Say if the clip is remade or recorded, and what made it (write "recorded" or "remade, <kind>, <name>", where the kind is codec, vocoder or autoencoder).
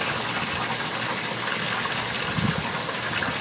recorded